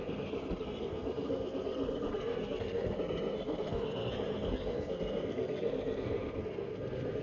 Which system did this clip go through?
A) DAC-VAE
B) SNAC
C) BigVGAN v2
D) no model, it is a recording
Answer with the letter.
B